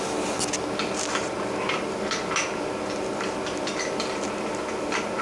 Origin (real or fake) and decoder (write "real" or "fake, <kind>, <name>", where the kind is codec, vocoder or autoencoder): real